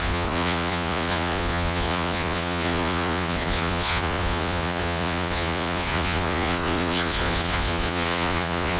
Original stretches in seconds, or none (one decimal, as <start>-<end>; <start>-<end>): none